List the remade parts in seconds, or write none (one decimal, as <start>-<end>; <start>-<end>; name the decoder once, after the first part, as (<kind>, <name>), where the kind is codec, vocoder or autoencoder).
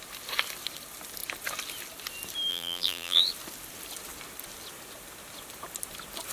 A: 2.5-3.2 (vocoder, BigVGAN v2)